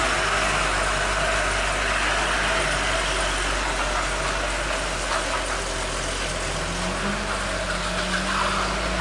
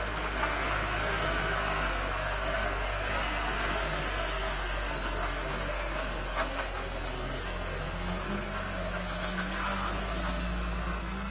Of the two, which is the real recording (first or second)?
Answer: first